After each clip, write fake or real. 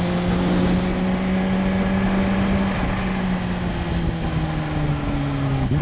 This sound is real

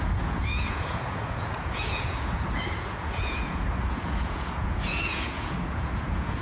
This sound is fake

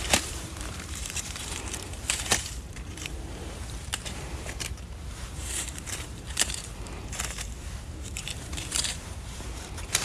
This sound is fake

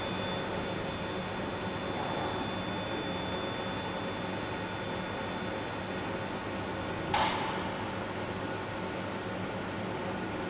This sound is real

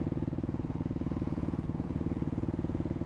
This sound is fake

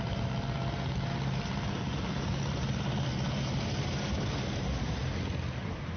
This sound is real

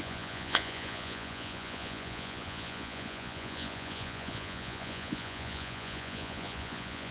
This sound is fake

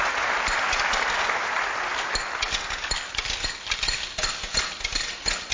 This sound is real